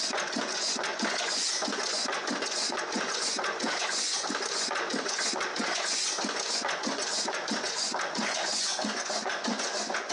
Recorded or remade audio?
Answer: remade